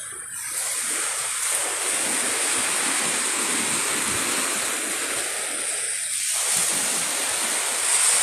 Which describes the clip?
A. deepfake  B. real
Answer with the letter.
B